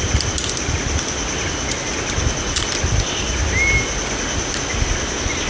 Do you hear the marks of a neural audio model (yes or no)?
no